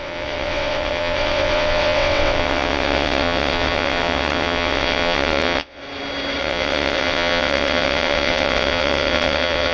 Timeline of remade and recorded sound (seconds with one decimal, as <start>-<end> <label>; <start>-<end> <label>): 0.0-5.8 remade; 5.8-6.4 recorded; 6.4-9.7 remade